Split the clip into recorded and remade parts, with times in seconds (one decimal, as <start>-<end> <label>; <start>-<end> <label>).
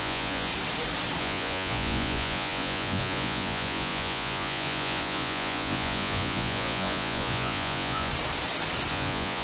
0.0-0.5 remade; 0.5-1.2 recorded; 1.2-8.1 remade; 8.1-8.9 recorded; 8.9-9.4 remade